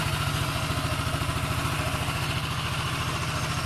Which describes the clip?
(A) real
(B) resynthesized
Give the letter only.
A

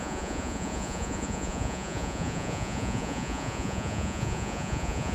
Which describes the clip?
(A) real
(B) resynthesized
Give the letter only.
B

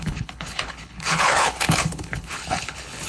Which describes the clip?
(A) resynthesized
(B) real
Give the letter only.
A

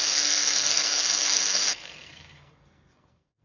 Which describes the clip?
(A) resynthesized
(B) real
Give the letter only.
A